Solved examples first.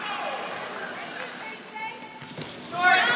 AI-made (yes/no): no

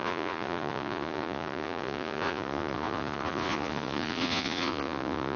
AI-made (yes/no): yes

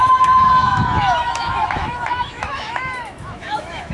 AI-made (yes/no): yes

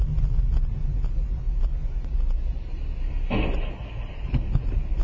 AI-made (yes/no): no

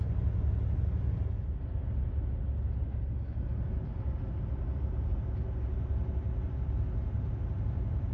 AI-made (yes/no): no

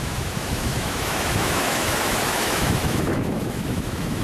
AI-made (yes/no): yes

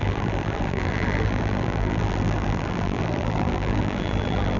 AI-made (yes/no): yes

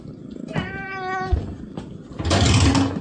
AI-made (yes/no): no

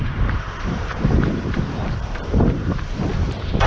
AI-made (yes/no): yes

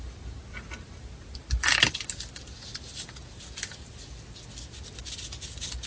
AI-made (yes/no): no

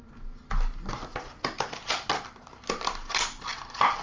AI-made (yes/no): no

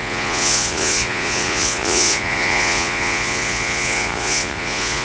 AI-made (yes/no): yes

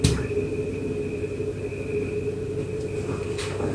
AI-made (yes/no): no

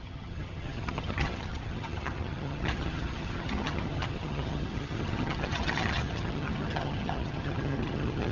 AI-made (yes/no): yes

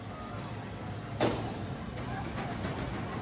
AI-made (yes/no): no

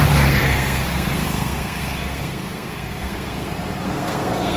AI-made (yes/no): yes